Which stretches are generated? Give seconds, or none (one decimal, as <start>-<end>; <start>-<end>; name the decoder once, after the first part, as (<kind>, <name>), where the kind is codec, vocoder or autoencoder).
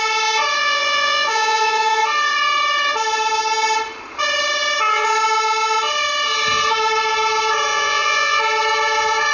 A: 0.6-2.0 (vocoder, Vocos); 7.7-8.4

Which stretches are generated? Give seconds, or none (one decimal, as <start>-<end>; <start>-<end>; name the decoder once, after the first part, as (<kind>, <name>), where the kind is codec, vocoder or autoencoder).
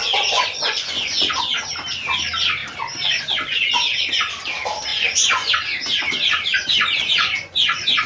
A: 0.0-1.4 (vocoder, Vocos); 4.9-5.5; 6.5-8.1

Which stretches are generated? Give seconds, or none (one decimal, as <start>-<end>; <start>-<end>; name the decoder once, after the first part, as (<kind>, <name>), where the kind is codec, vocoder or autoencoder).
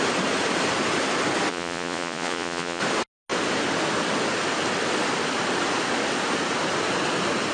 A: 1.5-2.8 (vocoder, Vocos)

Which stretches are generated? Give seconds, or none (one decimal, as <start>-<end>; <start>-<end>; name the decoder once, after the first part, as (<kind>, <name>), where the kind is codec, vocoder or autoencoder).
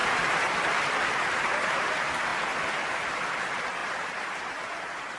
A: 0.0-1.8 (vocoder, BigVGAN v2); 3.8-4.8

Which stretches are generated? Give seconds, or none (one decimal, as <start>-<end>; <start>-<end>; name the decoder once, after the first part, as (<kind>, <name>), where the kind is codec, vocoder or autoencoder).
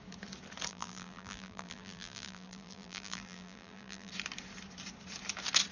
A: 0.7-4.1 (vocoder, BigVGAN v2)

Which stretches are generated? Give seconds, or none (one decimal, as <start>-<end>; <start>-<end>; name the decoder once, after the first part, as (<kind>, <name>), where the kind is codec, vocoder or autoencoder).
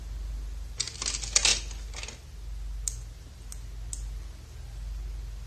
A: none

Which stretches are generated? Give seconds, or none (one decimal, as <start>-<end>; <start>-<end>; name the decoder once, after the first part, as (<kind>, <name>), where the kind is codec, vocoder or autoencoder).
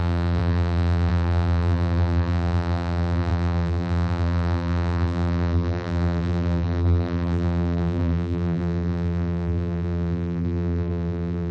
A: 0.0-11.5 (vocoder, BigVGAN v2)